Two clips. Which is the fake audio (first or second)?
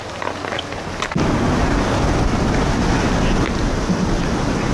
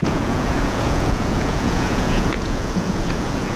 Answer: second